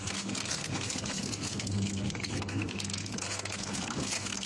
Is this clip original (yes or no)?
no